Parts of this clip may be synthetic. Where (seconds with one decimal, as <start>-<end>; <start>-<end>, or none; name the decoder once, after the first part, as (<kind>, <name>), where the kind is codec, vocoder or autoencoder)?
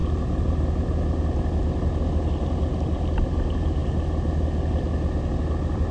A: none